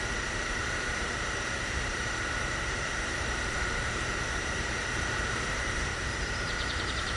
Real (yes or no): no